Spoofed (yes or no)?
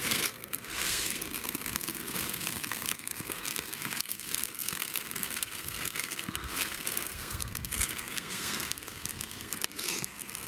yes